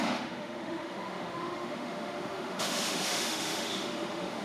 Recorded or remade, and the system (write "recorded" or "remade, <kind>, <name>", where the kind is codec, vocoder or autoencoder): remade, autoencoder, DAC-VAE